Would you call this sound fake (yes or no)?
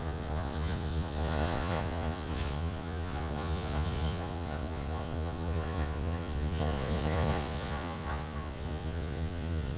yes